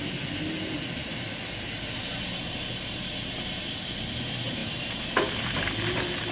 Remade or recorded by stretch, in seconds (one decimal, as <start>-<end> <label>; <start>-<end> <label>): 0.0-6.3 recorded